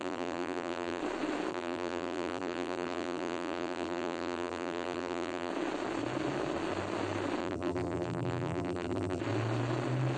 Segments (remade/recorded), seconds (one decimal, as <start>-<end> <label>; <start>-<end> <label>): 0.0-1.0 remade; 1.0-1.5 recorded; 1.5-5.5 remade; 5.5-7.4 recorded; 7.4-9.2 remade; 9.2-10.2 recorded